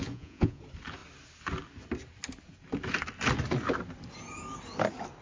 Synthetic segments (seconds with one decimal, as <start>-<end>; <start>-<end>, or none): 0.0-0.6